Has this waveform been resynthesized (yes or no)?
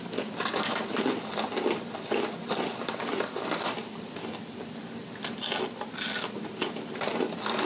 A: no